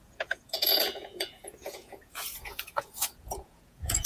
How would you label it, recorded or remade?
remade